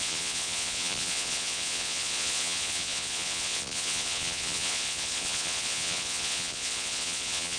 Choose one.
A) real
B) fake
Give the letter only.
B